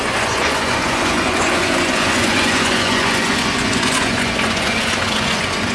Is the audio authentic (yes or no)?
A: no